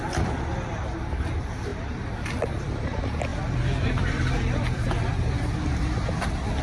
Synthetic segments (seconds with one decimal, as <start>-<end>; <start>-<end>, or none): 3.3-4.9